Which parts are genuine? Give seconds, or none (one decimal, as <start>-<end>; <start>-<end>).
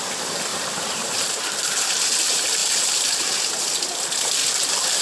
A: 0.0-0.5; 1.4-2.6; 3.6-5.0